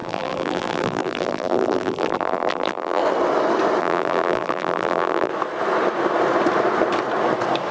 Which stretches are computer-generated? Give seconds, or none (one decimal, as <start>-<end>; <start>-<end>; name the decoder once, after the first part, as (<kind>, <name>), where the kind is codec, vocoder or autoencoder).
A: 0.0-3.0 (vocoder, BigVGAN v2); 3.8-5.3